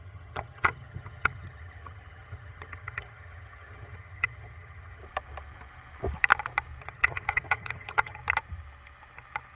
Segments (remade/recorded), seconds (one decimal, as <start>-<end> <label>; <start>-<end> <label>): 0.0-5.0 remade; 5.0-6.8 recorded; 6.8-8.2 remade; 8.2-9.6 recorded